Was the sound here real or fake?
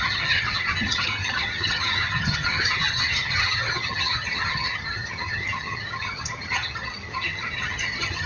fake